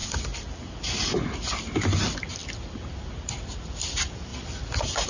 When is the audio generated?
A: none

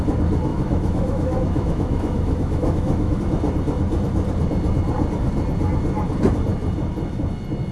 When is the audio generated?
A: 0.5-3.2 (autoencoder, DAC-VAE)

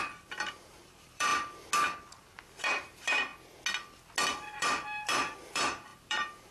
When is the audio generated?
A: 0.0-1.3 (vocoder, BigVGAN v2); 2.2-3.3; 4.6-6.5

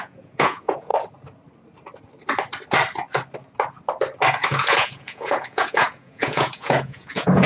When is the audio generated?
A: 0.0-0.9 (vocoder, Vocos); 4.3-7.5

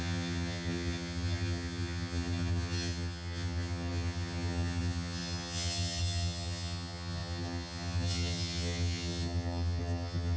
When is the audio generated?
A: 0.0-10.4 (vocoder, HiFi-GAN)